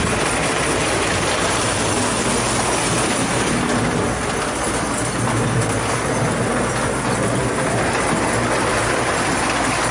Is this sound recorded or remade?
recorded